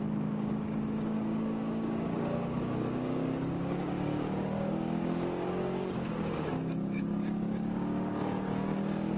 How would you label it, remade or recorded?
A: remade